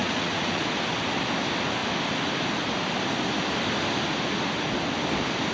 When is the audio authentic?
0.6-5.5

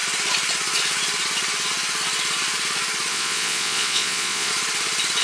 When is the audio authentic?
0.0-3.1; 4.5-5.2